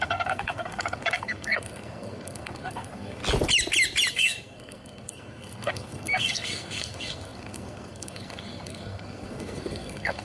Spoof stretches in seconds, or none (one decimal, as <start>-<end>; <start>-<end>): 0.0-3.2; 4.1-10.2